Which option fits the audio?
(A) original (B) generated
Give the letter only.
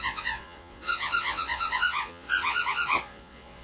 B